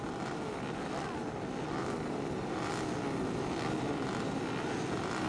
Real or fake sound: real